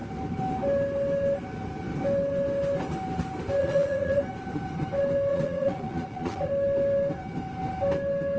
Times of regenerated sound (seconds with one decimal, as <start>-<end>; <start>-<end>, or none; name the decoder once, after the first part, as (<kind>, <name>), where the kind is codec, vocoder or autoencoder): 3.6-4.2 (vocoder, Vocos); 5.3-6.5